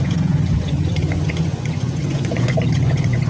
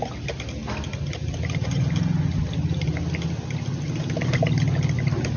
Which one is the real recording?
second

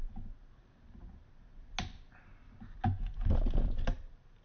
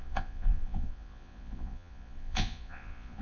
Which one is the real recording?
first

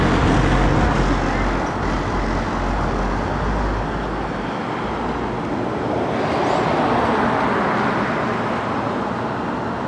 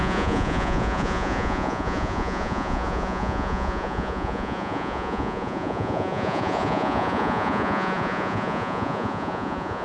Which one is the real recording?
first